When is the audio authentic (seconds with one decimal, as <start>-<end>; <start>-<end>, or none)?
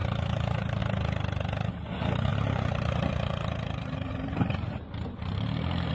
0.8-2.3